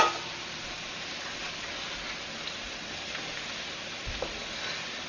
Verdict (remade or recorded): recorded